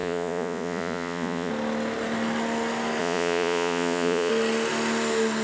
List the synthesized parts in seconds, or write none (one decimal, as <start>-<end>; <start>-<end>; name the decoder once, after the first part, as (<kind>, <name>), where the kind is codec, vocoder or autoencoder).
0.0-1.5 (vocoder, Vocos); 3.0-4.3